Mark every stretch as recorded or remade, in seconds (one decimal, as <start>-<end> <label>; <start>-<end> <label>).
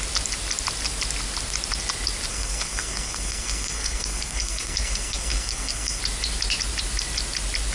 0.0-2.3 recorded; 2.3-6.0 remade; 6.0-7.7 recorded